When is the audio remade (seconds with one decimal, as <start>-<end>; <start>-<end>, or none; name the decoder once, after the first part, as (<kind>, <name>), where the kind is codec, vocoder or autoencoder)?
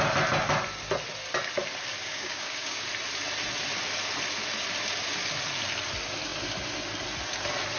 2.0-2.8 (codec, DAC)